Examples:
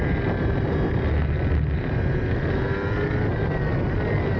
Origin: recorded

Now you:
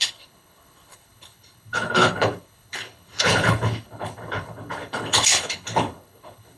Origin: remade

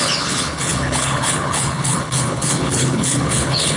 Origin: remade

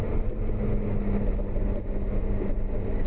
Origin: recorded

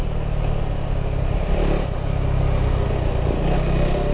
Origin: recorded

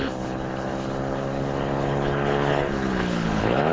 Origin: remade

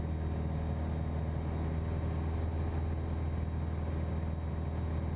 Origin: recorded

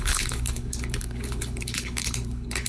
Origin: remade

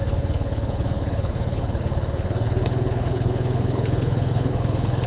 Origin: remade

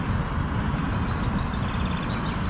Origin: recorded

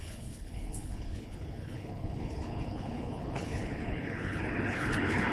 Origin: remade